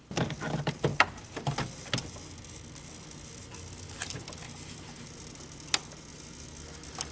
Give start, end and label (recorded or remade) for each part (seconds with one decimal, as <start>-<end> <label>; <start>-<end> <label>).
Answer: 0.0-7.1 recorded